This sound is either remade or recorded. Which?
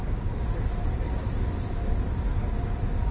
recorded